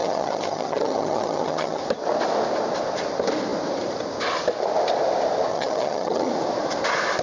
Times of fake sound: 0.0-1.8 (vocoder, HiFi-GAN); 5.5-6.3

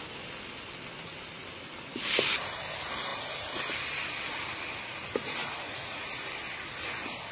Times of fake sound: 5.4-6.1 (vocoder, Vocos)

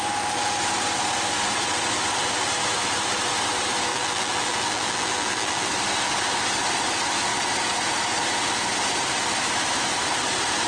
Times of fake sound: 3.9-5.7 (vocoder, BigVGAN v2)

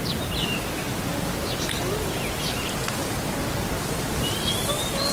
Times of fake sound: 1.1-1.8 (vocoder, BigVGAN v2)

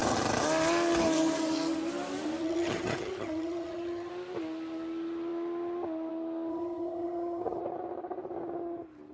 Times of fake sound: 2.4-4.1 (vocoder, HiFi-GAN); 6.5-7.6

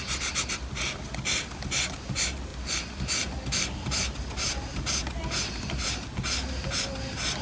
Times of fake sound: none

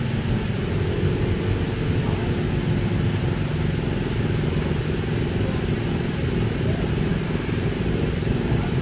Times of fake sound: none